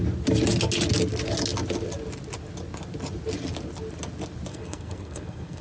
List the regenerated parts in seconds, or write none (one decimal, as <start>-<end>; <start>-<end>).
4.5-5.6